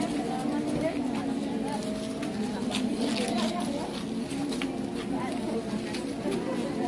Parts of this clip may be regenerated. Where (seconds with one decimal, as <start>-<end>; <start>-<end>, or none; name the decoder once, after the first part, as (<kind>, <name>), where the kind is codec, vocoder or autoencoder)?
none

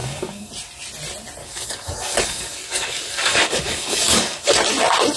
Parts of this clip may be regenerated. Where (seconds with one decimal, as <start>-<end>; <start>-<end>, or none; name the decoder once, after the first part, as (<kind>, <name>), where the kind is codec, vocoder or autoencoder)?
0.0-0.5 (codec, DAC); 1.4-4.5

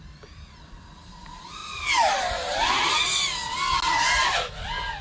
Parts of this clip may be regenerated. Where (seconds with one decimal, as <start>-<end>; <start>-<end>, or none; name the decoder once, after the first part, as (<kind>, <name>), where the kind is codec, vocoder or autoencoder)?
none

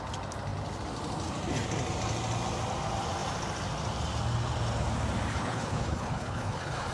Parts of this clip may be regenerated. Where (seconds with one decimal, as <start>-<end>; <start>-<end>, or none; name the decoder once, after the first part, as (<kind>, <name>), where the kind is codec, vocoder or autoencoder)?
5.3-6.9 (codec, HILCodec)

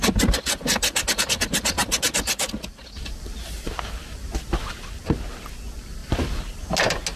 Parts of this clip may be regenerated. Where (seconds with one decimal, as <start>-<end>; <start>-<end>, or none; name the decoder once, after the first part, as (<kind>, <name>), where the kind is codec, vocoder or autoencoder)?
none